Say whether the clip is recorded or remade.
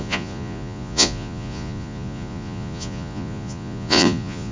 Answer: remade